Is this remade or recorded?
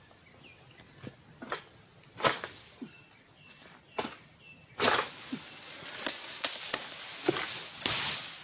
recorded